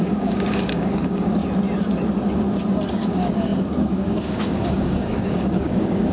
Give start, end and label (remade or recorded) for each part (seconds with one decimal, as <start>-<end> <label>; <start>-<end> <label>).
0.0-1.4 remade; 1.4-2.9 recorded; 2.9-6.1 remade